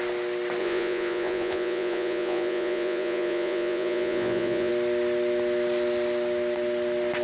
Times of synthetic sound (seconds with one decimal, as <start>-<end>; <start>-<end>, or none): 0.6-4.7